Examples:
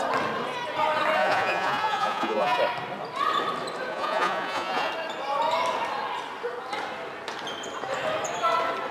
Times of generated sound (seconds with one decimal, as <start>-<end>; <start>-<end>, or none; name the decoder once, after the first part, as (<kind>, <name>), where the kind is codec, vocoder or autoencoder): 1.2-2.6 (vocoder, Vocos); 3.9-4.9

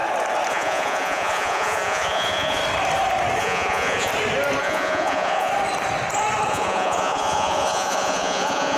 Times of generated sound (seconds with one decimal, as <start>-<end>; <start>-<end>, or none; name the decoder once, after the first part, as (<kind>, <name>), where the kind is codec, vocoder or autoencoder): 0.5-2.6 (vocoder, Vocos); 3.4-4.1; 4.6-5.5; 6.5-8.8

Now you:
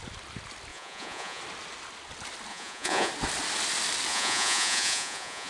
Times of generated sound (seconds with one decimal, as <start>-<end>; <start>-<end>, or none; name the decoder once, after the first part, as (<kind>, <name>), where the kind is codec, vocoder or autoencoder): 0.7-1.4 (vocoder, Vocos); 2.5-3.1; 4.1-5.5

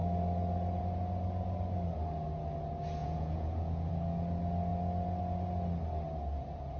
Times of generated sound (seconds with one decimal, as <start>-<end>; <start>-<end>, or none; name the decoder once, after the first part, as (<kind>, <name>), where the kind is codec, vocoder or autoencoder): 3.0-3.9 (vocoder, Vocos)